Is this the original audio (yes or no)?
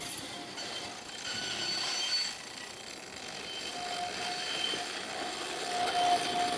yes